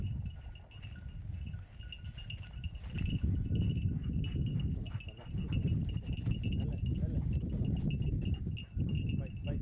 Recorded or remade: recorded